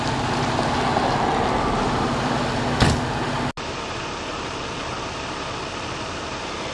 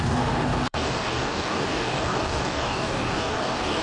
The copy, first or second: second